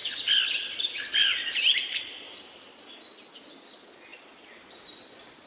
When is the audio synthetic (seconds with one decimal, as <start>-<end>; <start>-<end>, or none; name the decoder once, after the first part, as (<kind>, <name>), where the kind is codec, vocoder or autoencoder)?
none